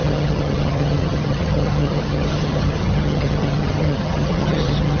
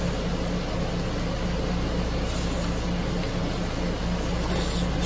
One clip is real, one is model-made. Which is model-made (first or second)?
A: first